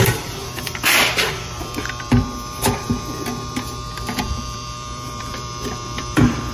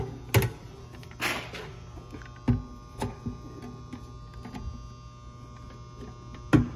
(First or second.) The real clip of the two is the second